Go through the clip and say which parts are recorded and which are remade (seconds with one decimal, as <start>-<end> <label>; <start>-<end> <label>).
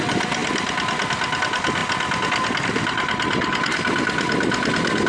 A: 0.0-5.1 recorded